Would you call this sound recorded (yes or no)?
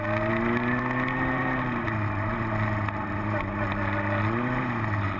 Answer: yes